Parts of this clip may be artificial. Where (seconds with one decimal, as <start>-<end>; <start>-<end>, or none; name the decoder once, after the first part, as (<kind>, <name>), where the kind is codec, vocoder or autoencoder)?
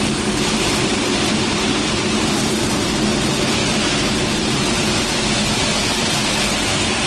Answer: none